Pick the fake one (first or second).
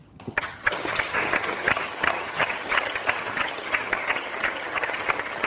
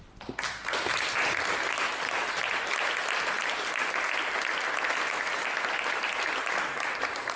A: first